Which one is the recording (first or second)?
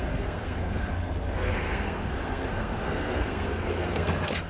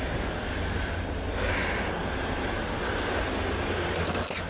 second